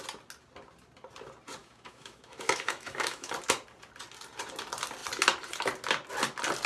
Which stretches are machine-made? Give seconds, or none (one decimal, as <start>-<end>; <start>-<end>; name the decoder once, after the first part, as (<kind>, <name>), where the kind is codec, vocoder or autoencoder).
1.6-3.3 (autoencoder, DAC-VAE)